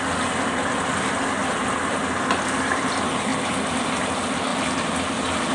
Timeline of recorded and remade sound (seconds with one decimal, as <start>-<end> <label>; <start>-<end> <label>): 0.0-5.5 recorded